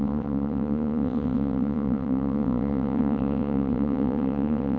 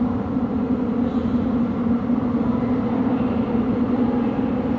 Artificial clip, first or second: first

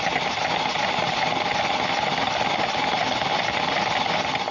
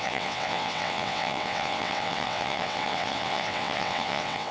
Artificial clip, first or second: second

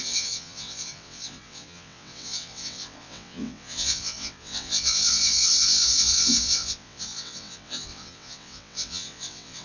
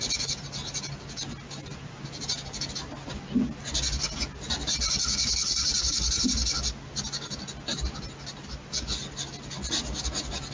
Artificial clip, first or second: first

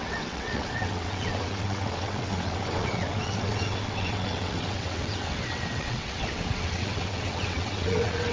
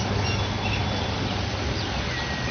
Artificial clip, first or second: first